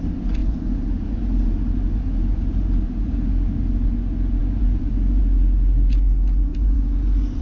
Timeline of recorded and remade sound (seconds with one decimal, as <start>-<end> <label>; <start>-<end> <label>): 0.0-0.4 recorded; 0.4-3.3 remade; 3.3-4.4 recorded; 4.4-5.2 remade; 5.2-6.5 recorded; 6.5-7.4 remade